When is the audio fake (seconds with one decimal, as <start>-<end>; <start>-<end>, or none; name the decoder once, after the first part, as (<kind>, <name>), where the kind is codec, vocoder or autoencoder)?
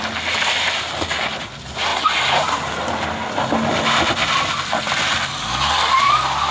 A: none